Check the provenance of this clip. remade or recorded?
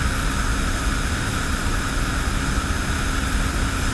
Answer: recorded